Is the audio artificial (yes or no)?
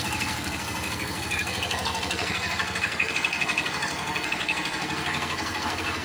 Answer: yes